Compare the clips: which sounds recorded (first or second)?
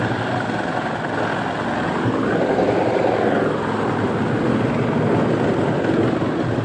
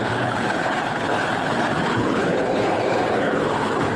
first